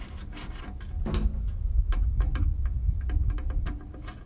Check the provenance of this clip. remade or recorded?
recorded